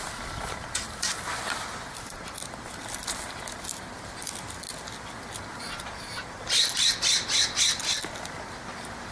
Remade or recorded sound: recorded